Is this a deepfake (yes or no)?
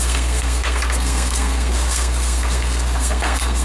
yes